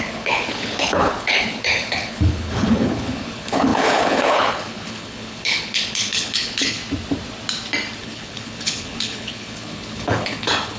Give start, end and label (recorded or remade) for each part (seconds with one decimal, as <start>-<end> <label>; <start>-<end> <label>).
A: 0.0-6.8 remade; 6.8-8.0 recorded; 8.0-10.8 remade